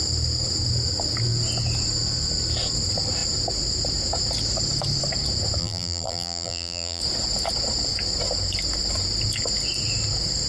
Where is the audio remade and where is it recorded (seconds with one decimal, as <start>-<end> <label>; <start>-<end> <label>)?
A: 0.0-5.6 recorded; 5.6-7.0 remade; 7.0-10.5 recorded